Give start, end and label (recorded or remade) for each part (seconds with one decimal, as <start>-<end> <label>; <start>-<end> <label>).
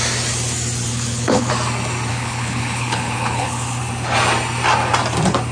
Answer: 0.0-0.9 recorded; 0.9-1.5 remade; 1.5-2.1 recorded; 2.1-3.8 remade; 3.8-5.5 recorded